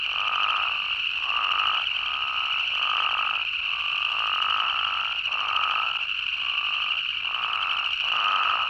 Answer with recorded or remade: recorded